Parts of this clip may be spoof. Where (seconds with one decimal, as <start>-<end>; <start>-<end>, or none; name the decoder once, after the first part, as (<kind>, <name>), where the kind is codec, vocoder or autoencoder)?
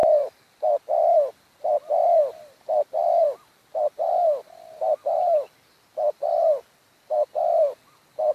0.0-8.3 (vocoder, BigVGAN v2)